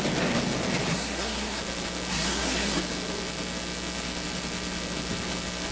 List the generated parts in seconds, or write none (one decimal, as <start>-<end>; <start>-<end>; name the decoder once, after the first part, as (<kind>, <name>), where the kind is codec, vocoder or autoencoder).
0.9-1.6 (codec, SNAC); 2.1-2.8